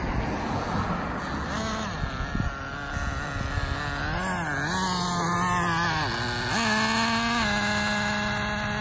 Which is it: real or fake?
real